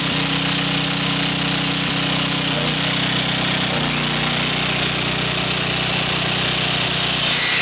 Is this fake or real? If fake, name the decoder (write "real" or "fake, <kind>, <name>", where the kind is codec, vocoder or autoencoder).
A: real